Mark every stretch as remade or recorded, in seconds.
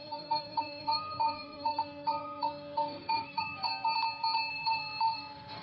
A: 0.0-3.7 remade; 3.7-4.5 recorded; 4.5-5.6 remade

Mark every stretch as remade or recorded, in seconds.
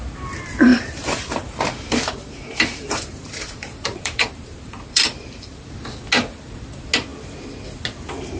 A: 0.0-0.7 recorded; 0.7-5.7 remade; 5.7-8.4 recorded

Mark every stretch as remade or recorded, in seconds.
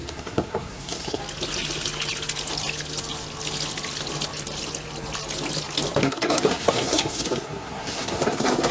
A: 0.0-1.2 remade; 1.2-6.0 recorded; 6.0-8.7 remade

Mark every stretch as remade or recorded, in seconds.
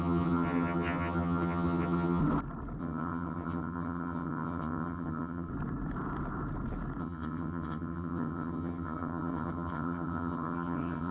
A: 0.0-2.2 remade; 2.2-2.8 recorded; 2.8-5.5 remade; 5.5-7.0 recorded; 7.0-11.1 remade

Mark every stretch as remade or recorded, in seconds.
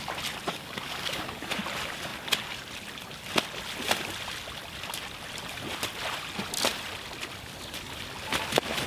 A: 0.0-0.5 recorded; 0.5-1.6 remade; 1.6-8.9 recorded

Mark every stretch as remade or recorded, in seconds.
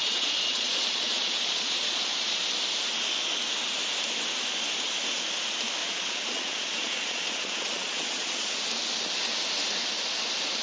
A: 0.0-2.4 remade; 2.4-5.8 recorded; 5.8-8.6 remade; 8.6-10.6 recorded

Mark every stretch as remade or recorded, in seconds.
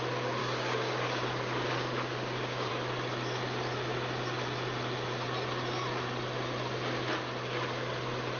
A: 0.0-0.4 recorded; 0.4-2.7 remade; 2.7-8.4 recorded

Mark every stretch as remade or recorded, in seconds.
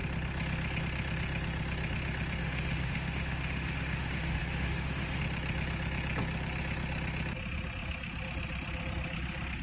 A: 0.0-2.4 recorded; 2.4-5.2 remade; 5.2-9.6 recorded